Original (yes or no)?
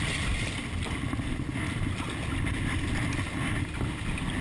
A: yes